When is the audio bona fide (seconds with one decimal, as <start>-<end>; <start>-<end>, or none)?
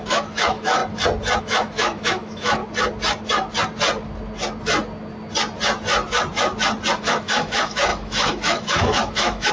0.8-1.4; 2.6-7.0